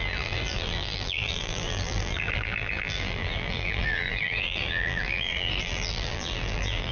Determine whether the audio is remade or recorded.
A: remade